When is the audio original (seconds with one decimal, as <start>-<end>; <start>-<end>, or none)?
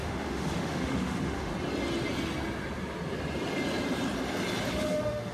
1.5-4.7